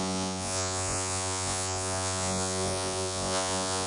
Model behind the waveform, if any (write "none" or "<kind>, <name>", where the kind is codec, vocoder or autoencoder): vocoder, Vocos